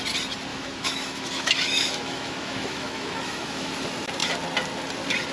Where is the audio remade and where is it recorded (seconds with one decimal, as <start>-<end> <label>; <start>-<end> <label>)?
0.0-0.5 recorded; 0.5-3.7 remade; 3.7-5.3 recorded